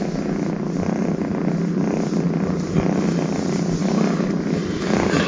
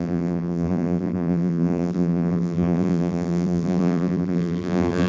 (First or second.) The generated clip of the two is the second